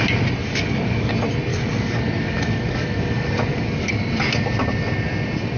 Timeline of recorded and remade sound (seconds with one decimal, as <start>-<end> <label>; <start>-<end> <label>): 0.0-0.4 recorded; 0.4-1.1 remade; 1.1-1.5 recorded; 1.5-3.9 remade; 3.9-5.6 recorded